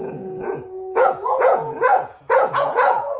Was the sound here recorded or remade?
remade